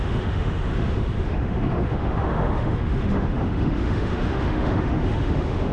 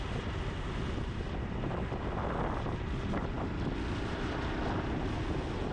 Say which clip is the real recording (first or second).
second